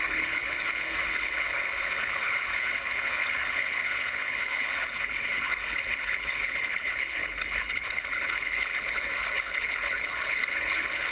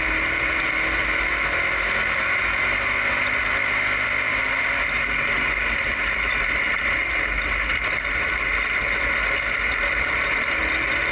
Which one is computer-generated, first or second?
first